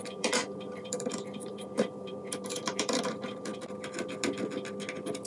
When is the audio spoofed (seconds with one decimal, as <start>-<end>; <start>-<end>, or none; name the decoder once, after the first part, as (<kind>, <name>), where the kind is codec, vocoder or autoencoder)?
0.0-3.5 (vocoder, BigVGAN v2)